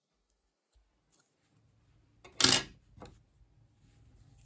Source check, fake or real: real